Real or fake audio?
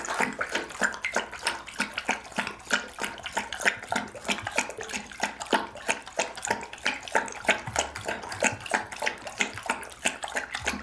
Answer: real